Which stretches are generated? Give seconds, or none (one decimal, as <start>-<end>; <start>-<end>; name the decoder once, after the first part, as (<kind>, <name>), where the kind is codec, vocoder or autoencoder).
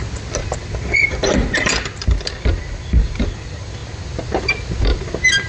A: none